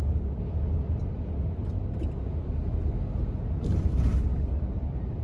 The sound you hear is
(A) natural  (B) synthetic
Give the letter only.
A